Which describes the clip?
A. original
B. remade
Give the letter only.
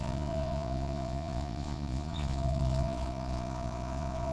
B